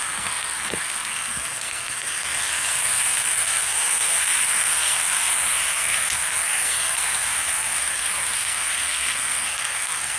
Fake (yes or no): yes